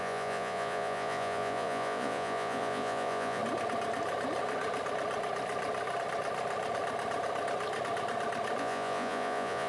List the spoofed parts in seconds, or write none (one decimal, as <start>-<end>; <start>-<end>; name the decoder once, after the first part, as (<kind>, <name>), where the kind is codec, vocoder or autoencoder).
0.0-3.4 (vocoder, Vocos); 8.6-9.7